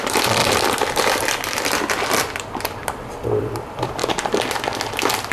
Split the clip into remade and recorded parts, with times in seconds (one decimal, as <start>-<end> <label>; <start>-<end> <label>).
0.0-4.0 remade; 4.0-5.3 recorded